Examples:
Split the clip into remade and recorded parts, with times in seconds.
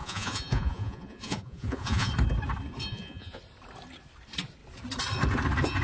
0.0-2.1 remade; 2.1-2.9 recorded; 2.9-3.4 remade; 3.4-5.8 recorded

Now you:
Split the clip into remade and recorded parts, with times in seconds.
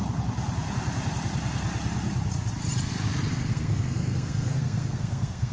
0.0-3.3 recorded; 3.3-5.5 remade